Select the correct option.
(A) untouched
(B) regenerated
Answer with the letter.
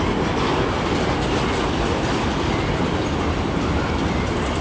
A